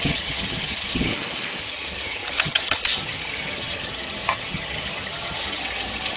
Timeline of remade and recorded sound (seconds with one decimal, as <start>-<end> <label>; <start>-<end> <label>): 0.0-1.1 remade; 1.1-1.6 recorded; 1.6-6.2 remade